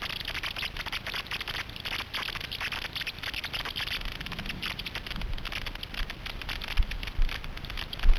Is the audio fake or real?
fake